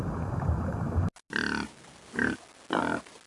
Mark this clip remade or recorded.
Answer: recorded